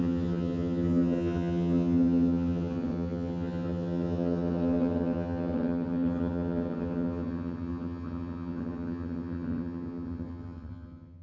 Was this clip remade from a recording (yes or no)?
yes